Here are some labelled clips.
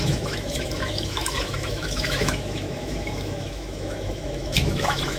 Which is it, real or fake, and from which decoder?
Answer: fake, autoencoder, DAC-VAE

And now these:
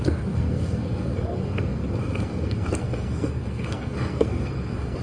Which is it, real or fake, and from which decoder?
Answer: fake, codec, SNAC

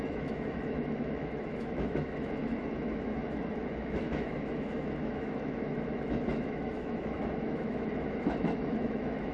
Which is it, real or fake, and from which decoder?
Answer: fake, autoencoder, DAC-VAE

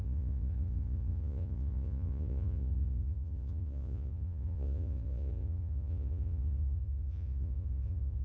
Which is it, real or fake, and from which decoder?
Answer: fake, vocoder, Vocos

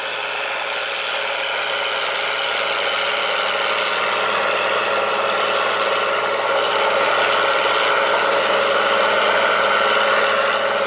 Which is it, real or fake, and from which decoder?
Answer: real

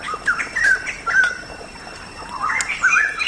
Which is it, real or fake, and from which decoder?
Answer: real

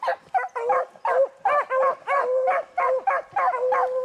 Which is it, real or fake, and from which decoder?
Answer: real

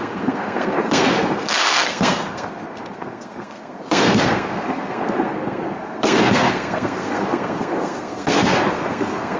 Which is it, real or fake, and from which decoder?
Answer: fake, codec, SNAC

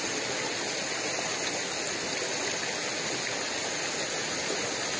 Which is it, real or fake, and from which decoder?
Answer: real